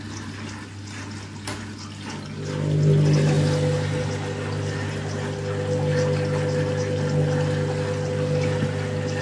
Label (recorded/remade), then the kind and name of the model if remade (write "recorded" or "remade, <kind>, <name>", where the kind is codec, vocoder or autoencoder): recorded